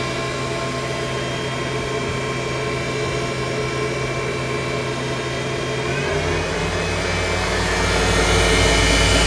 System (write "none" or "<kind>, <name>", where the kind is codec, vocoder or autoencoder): none